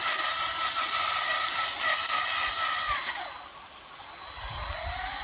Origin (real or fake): real